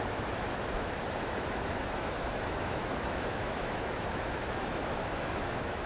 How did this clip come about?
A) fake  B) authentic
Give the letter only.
A